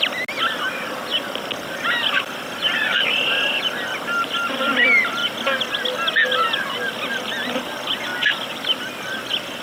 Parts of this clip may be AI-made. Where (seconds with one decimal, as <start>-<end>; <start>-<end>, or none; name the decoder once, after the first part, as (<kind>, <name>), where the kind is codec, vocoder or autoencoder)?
8.1-8.8 (vocoder, BigVGAN v2)